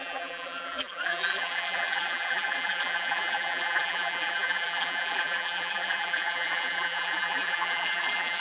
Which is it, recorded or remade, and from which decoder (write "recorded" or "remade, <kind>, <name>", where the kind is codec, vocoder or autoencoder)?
remade, vocoder, BigVGAN v2